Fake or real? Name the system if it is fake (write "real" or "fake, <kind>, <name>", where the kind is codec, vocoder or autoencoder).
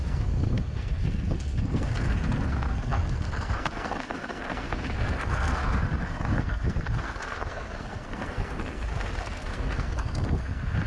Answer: fake, codec, SNAC